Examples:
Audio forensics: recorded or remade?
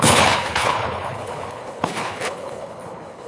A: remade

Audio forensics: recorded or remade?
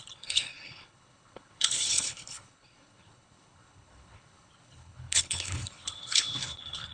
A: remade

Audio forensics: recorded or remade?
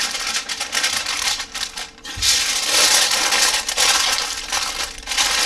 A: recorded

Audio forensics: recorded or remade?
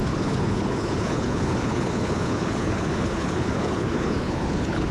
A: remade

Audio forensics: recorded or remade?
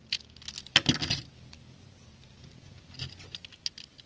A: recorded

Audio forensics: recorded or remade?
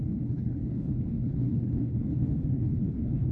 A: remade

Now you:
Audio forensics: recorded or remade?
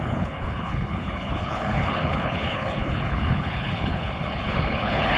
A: remade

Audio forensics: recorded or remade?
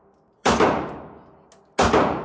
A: recorded